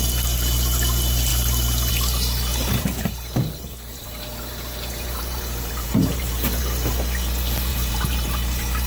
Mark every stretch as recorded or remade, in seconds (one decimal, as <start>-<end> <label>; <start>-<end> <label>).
0.0-2.5 recorded; 2.5-6.6 remade; 6.6-7.7 recorded; 7.7-8.9 remade